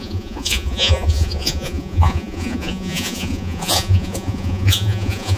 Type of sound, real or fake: fake